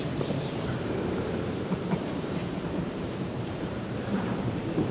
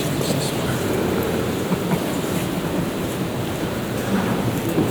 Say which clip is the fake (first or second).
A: first